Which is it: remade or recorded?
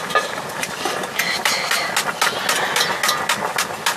recorded